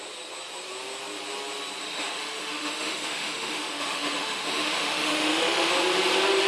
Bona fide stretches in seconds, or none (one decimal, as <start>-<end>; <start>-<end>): 0.0-1.8; 5.7-6.5